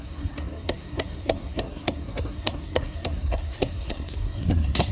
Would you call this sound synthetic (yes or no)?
yes